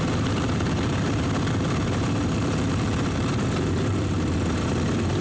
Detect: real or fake fake